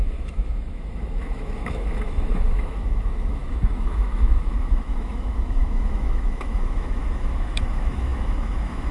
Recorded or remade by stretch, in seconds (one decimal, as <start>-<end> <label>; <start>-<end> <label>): 0.0-8.9 remade